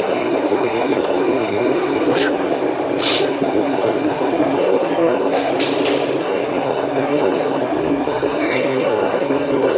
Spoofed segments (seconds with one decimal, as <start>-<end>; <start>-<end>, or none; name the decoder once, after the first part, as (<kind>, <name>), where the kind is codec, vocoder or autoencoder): 0.0-2.6 (codec, SNAC); 3.2-5.5; 6.2-9.8